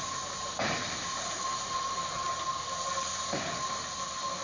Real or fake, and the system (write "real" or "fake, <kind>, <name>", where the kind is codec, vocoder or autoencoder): real